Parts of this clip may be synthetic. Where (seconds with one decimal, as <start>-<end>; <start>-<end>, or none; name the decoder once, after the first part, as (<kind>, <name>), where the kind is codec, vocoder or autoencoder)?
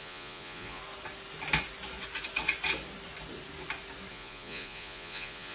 0.0-0.8 (vocoder, Vocos); 4.1-5.5